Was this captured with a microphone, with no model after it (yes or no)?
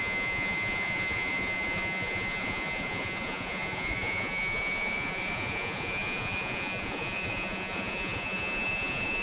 no